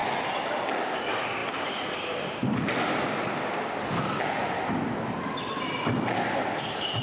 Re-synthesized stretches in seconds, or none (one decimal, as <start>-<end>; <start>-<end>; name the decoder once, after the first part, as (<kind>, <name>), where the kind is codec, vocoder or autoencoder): none